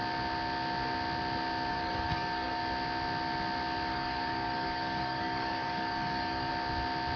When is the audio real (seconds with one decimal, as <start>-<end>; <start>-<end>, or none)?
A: 0.0-1.7; 2.6-3.9; 6.5-7.2